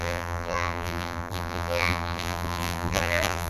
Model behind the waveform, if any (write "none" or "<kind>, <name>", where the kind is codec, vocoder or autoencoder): vocoder, BigVGAN v2